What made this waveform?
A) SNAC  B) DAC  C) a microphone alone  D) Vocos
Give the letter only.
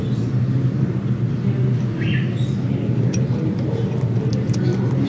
C